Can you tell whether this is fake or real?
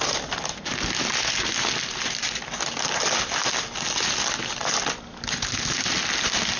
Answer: real